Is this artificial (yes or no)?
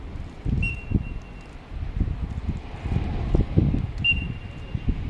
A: no